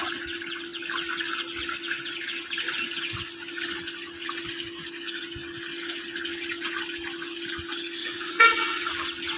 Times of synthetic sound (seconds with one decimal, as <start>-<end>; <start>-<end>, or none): 8.0-8.9